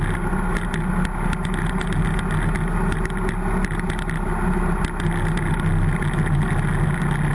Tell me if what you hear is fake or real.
real